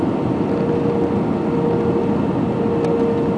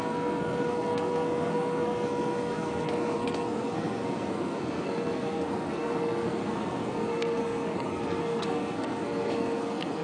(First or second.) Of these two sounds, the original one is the first